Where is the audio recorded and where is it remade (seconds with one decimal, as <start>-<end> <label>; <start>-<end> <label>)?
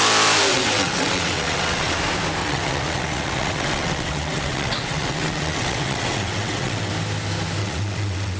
0.0-0.5 recorded; 0.5-2.0 remade; 2.0-2.4 recorded; 2.4-6.9 remade; 6.9-7.6 recorded; 7.6-8.4 remade